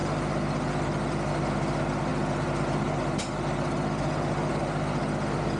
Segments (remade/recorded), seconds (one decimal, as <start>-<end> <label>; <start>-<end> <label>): 0.0-5.6 recorded